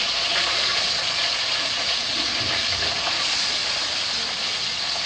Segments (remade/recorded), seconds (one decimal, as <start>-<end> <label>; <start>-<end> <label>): 0.0-2.3 remade; 2.3-3.2 recorded; 3.2-3.6 remade; 3.6-4.6 recorded; 4.6-5.1 remade